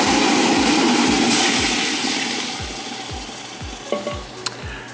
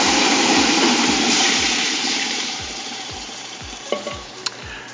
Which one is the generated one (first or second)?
second